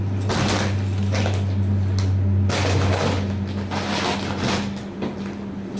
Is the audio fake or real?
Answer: real